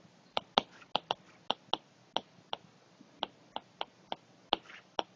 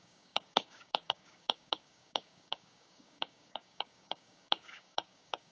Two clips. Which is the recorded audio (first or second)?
first